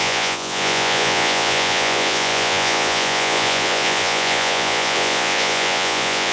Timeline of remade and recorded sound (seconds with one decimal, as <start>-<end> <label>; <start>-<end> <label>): 0.0-6.3 remade